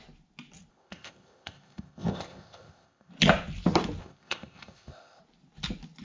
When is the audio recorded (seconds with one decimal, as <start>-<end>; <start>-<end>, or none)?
0.0-0.7; 3.1-4.0; 5.2-6.0